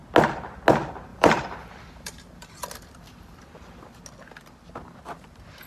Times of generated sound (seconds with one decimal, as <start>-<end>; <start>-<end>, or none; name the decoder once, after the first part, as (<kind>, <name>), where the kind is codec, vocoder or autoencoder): 1.1-4.0 (vocoder, BigVGAN v2)